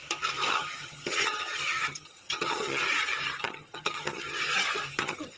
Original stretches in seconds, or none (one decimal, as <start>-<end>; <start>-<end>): 0.0-0.5; 2.8-3.4; 4.5-5.0